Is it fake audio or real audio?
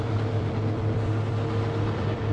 fake